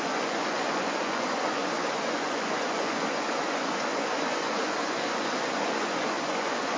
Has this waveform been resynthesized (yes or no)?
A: yes